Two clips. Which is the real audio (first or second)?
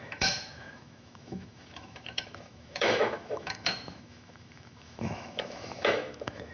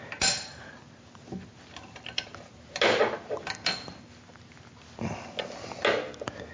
second